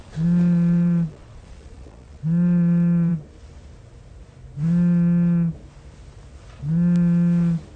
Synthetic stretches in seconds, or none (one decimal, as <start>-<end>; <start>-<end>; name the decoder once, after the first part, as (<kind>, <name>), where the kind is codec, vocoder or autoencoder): 0.0-3.1 (vocoder, Vocos)